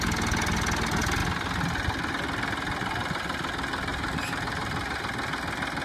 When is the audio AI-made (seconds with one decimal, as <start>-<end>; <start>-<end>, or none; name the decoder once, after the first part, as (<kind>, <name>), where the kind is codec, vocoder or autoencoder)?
3.9-5.0 (vocoder, BigVGAN v2)